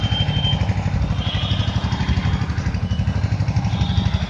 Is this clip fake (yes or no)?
no